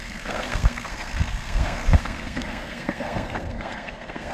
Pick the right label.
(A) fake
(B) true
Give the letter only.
A